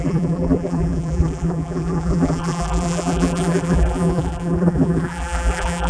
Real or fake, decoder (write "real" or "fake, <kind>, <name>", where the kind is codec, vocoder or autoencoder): fake, vocoder, BigVGAN v2